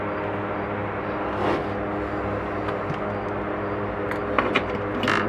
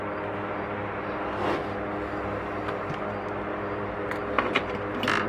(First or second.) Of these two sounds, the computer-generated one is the second